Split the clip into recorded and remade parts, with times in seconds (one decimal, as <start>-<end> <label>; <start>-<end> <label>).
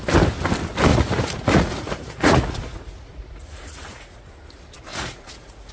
0.0-0.9 recorded; 0.9-4.3 remade; 4.3-4.9 recorded; 4.9-5.7 remade